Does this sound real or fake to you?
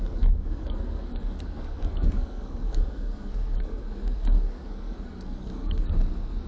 fake